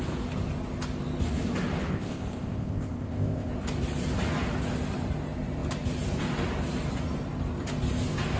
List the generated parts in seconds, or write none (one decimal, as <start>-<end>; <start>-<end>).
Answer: 1.9-3.5